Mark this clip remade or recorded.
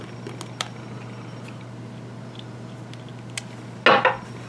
recorded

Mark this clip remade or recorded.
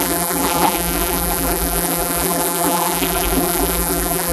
remade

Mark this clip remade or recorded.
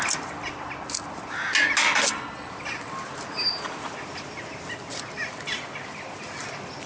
recorded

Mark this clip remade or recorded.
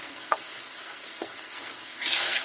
remade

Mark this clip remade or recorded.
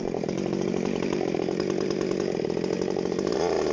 remade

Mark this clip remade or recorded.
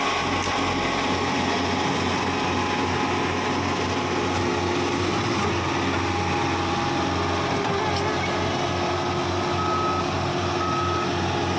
recorded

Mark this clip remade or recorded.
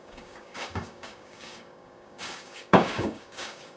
remade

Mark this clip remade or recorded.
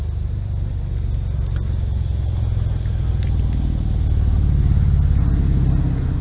recorded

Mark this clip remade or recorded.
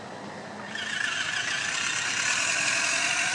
recorded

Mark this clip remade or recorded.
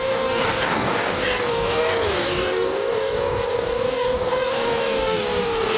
remade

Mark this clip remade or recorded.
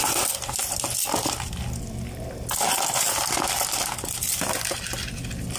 recorded